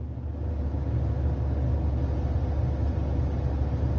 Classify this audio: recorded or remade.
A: recorded